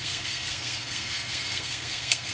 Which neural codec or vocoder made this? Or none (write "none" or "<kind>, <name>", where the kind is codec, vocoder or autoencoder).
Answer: codec, SNAC